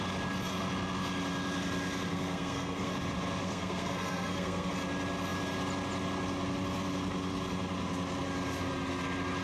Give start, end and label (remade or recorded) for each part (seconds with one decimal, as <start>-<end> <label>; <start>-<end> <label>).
0.0-2.1 recorded; 2.1-2.9 remade; 2.9-3.4 recorded; 3.4-4.7 remade; 4.7-9.4 recorded